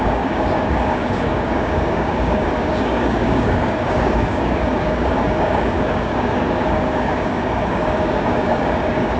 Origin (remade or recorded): remade